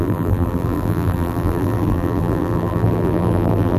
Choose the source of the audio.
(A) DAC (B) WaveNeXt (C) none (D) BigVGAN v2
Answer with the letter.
D